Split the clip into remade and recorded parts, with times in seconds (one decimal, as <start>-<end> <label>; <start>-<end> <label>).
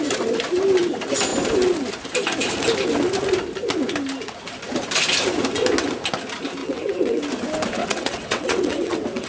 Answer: 0.0-6.6 recorded; 6.6-7.2 remade; 7.2-7.8 recorded; 7.8-9.3 remade